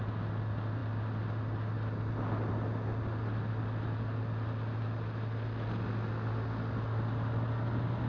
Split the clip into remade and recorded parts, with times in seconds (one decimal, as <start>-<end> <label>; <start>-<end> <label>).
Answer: 0.0-8.1 recorded